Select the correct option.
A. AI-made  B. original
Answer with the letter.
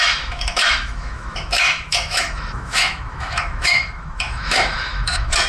A